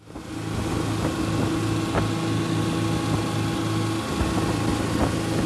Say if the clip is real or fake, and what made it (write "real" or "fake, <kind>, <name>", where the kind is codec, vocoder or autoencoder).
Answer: real